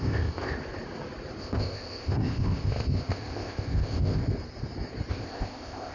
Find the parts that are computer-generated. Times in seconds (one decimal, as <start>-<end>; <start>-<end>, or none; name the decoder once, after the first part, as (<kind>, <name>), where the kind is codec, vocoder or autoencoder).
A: 0.0-0.5 (codec, ZipCodec); 1.4-4.2; 5.1-5.9